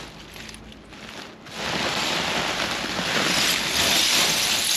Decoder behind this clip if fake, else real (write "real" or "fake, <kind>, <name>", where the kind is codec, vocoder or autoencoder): real